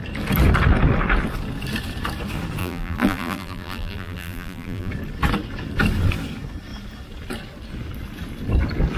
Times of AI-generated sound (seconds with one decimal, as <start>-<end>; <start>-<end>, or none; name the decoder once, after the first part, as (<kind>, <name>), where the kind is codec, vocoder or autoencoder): 2.6-4.9 (vocoder, BigVGAN v2)

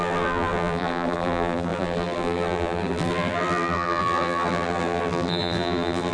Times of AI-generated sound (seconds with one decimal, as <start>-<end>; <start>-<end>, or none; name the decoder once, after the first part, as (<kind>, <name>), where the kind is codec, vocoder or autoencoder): 0.0-6.1 (vocoder, BigVGAN v2)